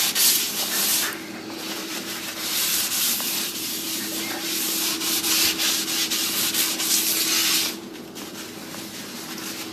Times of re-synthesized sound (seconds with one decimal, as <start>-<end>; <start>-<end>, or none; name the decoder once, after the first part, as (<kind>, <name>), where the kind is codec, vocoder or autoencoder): 0.9-5.3 (vocoder, BigVGAN v2); 7.4-8.0

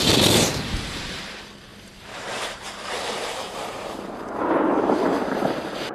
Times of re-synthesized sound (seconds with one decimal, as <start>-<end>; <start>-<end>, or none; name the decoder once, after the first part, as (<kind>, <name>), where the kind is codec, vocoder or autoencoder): 0.0-5.9 (vocoder, BigVGAN v2)

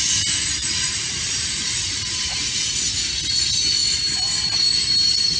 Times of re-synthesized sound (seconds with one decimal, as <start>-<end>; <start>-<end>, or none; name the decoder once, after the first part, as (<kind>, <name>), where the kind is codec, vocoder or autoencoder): 0.6-2.6 (vocoder, BigVGAN v2)

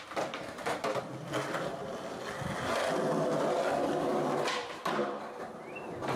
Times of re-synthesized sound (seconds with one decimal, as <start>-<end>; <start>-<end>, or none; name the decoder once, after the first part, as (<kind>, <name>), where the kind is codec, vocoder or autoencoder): 0.0-0.9 (vocoder, BigVGAN v2); 4.6-6.2